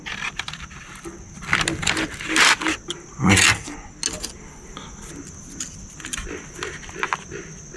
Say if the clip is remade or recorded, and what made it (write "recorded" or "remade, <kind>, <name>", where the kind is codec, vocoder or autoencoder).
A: recorded